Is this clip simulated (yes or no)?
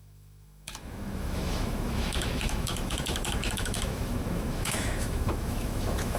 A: yes